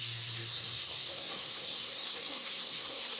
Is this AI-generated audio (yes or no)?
yes